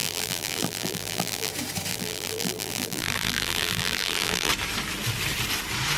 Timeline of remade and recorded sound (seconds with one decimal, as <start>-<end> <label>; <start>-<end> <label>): 0.0-1.5 remade; 1.5-1.9 recorded; 1.9-4.5 remade; 4.5-6.0 recorded